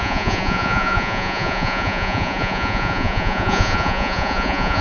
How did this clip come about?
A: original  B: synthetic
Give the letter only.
B